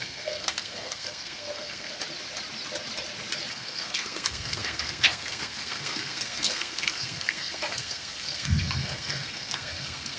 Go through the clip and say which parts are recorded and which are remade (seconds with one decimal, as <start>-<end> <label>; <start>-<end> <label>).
0.0-2.0 remade; 2.0-3.5 recorded; 3.5-10.2 remade